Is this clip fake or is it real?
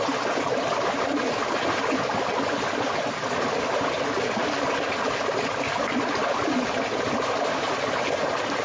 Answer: real